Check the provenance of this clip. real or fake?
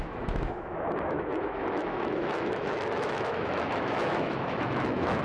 fake